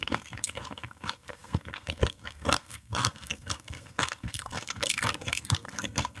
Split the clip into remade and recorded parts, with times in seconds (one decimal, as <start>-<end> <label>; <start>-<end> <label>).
0.0-6.2 remade